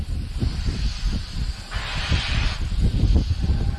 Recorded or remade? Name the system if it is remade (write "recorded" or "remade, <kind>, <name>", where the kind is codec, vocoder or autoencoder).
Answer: remade, vocoder, BigVGAN v2